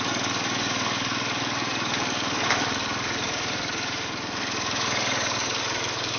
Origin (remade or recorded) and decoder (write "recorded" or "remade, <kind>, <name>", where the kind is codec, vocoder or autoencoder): remade, codec, DAC